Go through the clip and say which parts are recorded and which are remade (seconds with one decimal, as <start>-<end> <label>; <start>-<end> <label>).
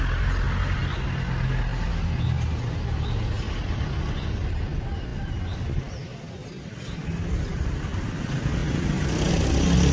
0.0-9.9 recorded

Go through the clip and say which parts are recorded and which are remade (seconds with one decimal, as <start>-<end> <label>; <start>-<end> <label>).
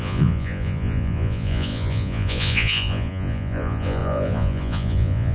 0.0-5.3 remade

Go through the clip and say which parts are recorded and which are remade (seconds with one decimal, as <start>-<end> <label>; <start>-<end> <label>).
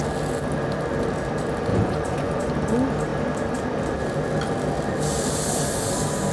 0.0-1.7 recorded; 1.7-2.5 remade; 2.5-6.3 recorded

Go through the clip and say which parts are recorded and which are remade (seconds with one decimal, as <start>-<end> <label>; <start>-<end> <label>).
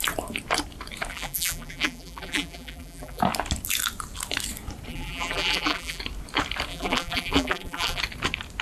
0.0-1.1 recorded; 1.1-3.2 remade; 3.2-4.9 recorded; 4.9-6.0 remade; 6.0-6.7 recorded; 6.7-8.0 remade; 8.0-8.6 recorded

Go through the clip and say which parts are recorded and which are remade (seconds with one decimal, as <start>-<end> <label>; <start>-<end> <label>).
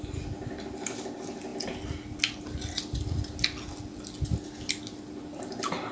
0.0-5.3 recorded; 5.3-5.9 remade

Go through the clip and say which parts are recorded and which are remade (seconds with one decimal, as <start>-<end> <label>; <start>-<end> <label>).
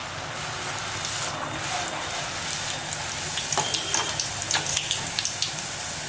0.0-4.7 recorded; 4.7-5.2 remade; 5.2-6.1 recorded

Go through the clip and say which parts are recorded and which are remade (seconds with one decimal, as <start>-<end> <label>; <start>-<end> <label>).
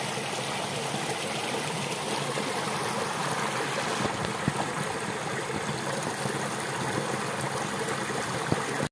0.0-8.9 recorded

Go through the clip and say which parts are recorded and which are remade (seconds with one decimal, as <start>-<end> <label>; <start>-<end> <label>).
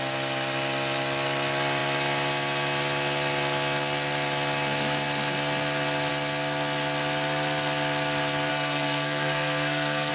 0.0-8.5 recorded; 8.5-10.1 remade